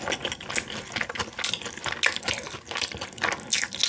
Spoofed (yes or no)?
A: no